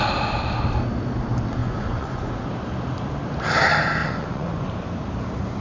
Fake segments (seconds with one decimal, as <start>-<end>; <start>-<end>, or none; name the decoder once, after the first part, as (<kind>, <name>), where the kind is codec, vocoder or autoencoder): 1.6-2.5 (vocoder, Vocos); 4.0-4.7